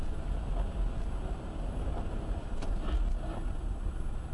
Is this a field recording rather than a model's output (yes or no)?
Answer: yes